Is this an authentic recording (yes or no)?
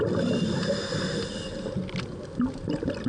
yes